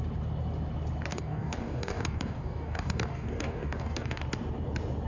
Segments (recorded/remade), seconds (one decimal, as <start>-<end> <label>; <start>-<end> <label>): 0.0-1.1 recorded; 1.1-4.2 remade; 4.2-5.1 recorded